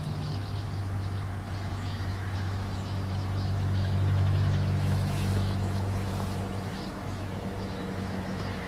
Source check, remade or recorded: remade